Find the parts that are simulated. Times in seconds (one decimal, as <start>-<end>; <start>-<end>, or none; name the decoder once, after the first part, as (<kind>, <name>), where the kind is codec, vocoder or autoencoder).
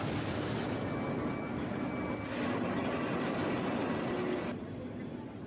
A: none